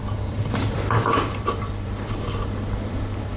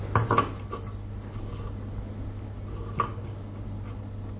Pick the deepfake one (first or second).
first